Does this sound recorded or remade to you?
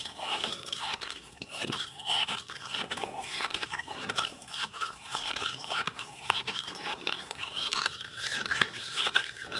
remade